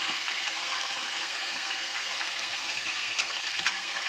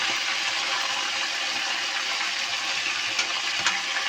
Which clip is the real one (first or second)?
second